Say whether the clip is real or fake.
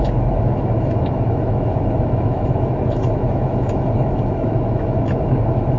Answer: fake